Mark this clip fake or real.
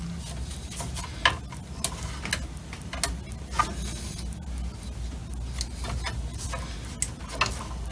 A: real